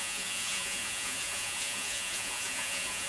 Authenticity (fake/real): fake